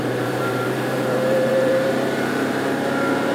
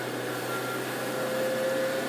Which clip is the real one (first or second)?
second